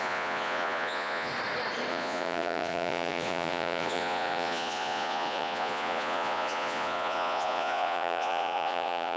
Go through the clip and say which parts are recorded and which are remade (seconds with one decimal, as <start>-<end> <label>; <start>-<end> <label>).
0.0-1.3 remade; 1.3-1.9 recorded; 1.9-9.2 remade